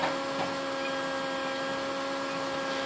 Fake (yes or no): no